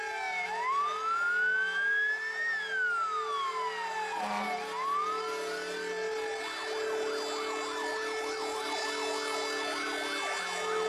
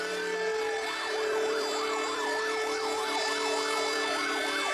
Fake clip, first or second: second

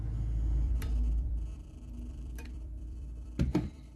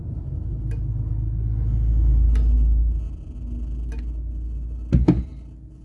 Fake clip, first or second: first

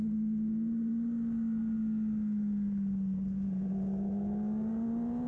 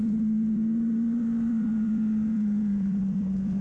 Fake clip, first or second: second